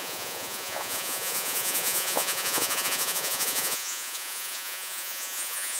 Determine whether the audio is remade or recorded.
remade